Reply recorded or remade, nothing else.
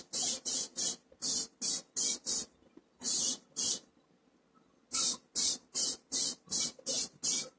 recorded